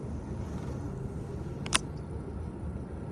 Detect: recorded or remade recorded